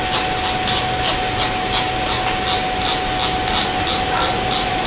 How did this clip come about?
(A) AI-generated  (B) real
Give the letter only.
B